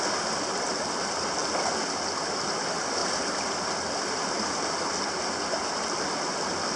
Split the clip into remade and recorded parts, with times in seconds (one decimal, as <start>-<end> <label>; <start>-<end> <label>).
0.0-6.8 recorded